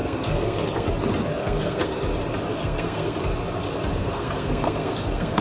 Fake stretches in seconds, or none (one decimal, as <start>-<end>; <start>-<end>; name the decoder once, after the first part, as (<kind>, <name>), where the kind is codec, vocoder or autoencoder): 0.0-0.9 (codec, SNAC); 1.4-2.0; 2.5-3.2; 3.9-5.4